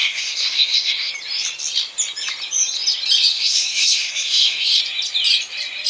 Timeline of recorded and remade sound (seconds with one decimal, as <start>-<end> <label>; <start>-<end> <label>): 0.0-1.1 remade; 1.1-3.3 recorded; 3.3-4.8 remade; 4.8-5.9 recorded